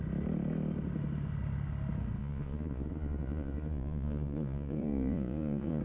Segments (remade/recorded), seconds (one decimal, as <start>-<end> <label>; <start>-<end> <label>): 0.0-2.2 recorded; 2.2-5.8 remade